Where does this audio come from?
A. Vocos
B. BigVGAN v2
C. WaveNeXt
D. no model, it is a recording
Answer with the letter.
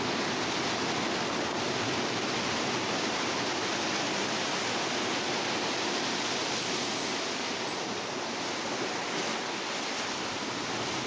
D